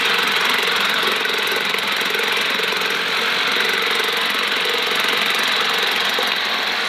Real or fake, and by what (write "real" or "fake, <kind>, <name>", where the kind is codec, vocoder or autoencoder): real